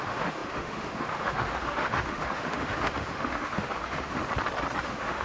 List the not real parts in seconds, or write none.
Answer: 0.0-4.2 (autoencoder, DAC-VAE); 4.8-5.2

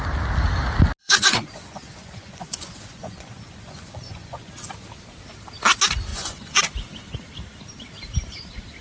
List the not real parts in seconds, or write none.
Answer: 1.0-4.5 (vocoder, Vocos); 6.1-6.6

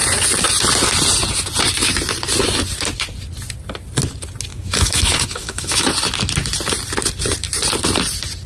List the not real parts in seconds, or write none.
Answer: 4.5-5.9 (autoencoder, DAC-VAE)